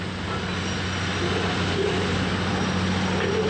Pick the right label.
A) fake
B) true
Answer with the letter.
B